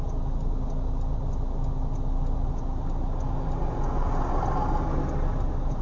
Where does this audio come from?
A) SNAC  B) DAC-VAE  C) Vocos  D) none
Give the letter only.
D